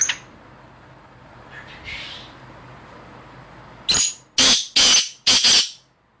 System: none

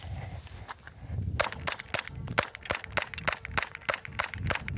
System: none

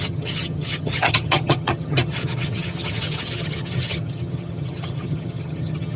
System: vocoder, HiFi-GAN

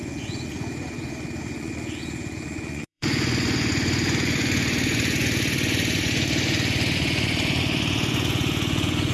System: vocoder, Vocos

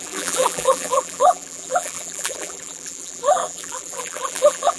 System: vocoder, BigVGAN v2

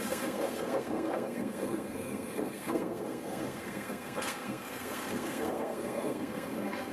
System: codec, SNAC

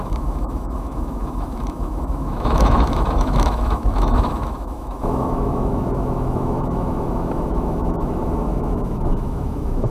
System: autoencoder, DAC-VAE